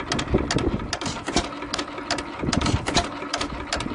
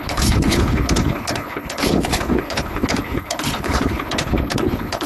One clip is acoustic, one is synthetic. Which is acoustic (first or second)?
first